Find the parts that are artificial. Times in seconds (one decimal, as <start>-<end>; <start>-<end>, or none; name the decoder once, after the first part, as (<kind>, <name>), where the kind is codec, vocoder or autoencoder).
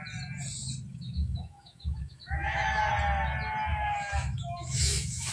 0.9-2.9 (autoencoder, DAC-VAE); 3.7-5.3